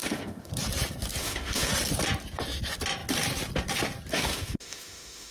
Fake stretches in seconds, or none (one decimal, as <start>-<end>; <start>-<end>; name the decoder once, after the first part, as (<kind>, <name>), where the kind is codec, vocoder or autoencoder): 0.0-0.5 (autoencoder, DAC-VAE); 1.2-1.7; 4.1-5.3